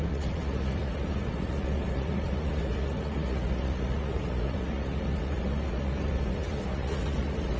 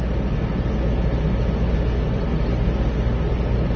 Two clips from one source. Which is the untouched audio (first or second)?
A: second